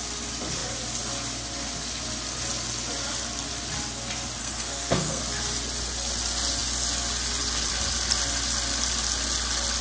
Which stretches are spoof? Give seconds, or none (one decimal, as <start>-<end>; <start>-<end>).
4.4-5.2